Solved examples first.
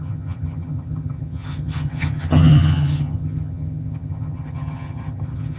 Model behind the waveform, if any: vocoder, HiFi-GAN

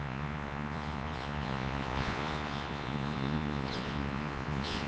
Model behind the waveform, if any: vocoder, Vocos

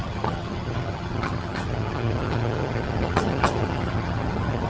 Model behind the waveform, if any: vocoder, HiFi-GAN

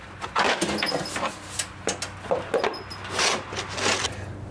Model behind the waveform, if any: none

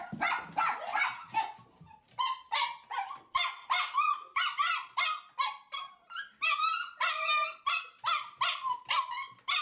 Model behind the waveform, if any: none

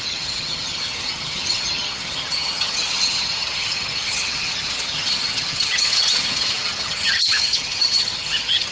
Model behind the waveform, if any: vocoder, HiFi-GAN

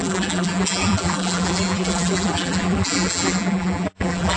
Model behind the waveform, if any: vocoder, BigVGAN v2